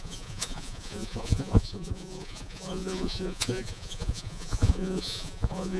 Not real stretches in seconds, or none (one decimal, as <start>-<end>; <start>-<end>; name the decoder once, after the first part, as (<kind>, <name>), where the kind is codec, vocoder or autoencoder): 0.0-5.8 (vocoder, Vocos)